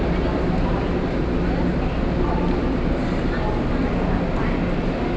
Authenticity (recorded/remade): recorded